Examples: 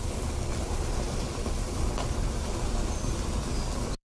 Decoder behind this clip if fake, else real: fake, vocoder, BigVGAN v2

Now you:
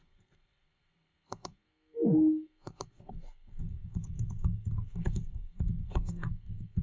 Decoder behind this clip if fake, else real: fake, codec, SNAC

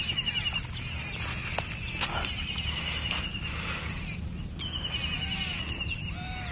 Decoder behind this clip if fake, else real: real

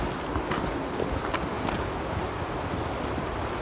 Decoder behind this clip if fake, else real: real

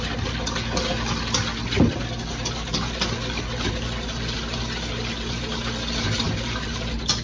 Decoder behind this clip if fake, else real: real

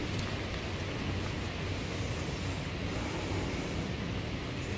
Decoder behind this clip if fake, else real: real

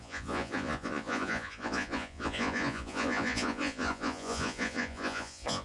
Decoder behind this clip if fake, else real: fake, vocoder, Vocos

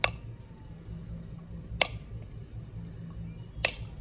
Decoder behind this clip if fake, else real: real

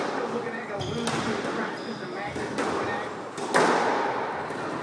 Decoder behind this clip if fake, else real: real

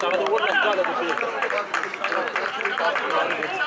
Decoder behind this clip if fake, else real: fake, vocoder, BigVGAN v2